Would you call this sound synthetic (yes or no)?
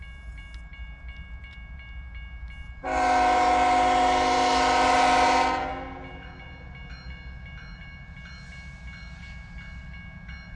no